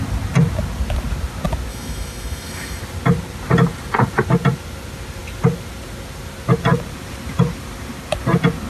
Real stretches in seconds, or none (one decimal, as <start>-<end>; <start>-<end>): 0.0-1.7; 2.8-8.7

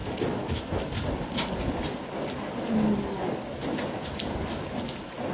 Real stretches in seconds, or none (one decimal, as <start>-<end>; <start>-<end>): 0.0-5.3

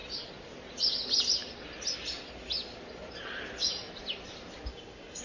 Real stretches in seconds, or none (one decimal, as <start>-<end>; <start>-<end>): 0.0-4.7